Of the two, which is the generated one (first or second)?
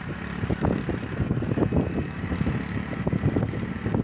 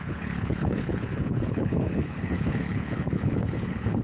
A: second